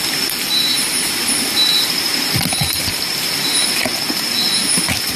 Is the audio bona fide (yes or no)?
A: yes